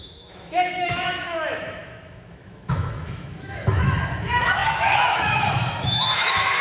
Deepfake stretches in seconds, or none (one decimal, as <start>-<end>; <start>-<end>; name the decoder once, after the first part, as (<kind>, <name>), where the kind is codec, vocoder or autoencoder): 0.0-6.6 (autoencoder, DAC-VAE)